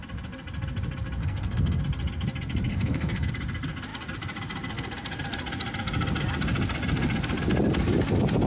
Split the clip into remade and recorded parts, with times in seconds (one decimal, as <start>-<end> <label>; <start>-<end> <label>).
0.0-1.2 recorded; 1.2-1.8 remade; 1.8-2.7 recorded; 2.7-3.3 remade; 3.3-8.5 recorded